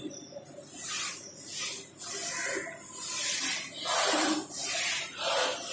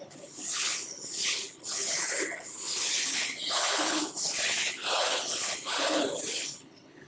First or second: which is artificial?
second